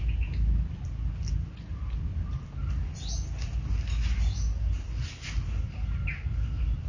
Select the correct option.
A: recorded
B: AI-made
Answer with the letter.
A